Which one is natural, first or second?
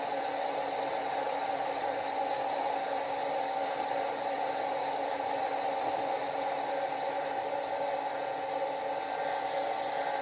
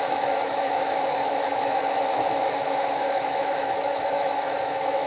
first